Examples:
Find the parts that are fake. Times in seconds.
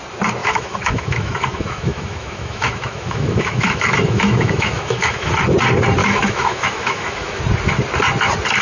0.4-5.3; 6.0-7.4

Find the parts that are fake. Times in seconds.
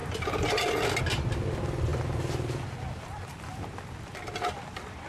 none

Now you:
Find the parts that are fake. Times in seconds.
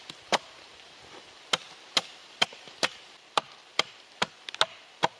0.7-1.5; 2.2-4.3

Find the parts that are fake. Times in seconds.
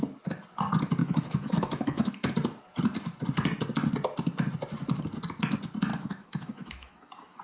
1.0-2.3; 5.9-7.4